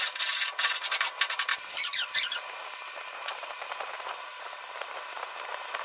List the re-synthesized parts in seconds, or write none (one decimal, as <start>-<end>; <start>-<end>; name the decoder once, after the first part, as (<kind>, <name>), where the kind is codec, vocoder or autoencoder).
0.0-5.8 (vocoder, BigVGAN v2)